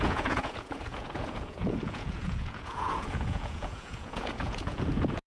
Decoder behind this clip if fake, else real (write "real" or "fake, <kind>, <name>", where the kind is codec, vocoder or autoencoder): fake, vocoder, Vocos